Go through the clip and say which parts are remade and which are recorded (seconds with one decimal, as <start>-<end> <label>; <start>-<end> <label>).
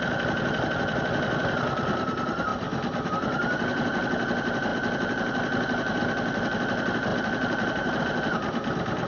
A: 0.0-9.1 recorded